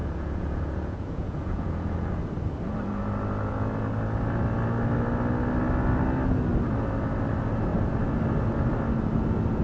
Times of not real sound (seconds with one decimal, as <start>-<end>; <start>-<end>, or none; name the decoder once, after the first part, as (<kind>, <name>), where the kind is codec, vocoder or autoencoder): 0.0-2.1 (vocoder, Vocos)